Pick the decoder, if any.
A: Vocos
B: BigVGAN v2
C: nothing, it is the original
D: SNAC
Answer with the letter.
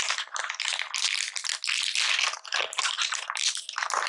C